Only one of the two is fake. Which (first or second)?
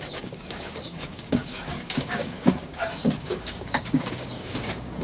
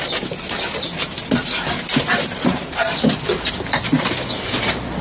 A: first